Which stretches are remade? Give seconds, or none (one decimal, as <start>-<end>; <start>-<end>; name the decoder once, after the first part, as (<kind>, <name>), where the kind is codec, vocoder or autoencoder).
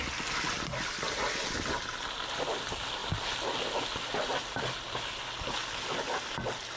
none